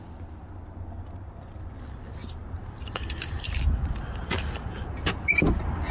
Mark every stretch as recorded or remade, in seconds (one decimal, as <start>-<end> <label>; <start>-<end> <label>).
0.0-2.2 recorded; 2.2-3.6 remade; 3.6-5.9 recorded